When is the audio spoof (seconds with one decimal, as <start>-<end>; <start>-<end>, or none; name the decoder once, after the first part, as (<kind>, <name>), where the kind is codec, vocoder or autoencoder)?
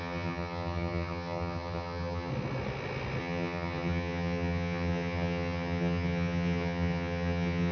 0.0-2.3 (vocoder, HiFi-GAN); 3.2-7.7